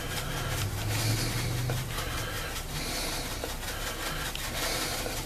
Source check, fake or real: real